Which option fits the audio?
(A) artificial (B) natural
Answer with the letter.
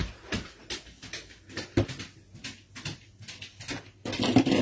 B